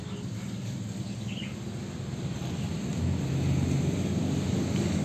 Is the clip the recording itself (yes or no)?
yes